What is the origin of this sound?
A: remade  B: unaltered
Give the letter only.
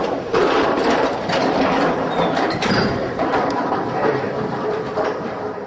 A